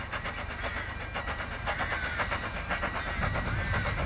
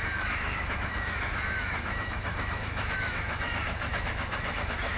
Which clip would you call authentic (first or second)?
first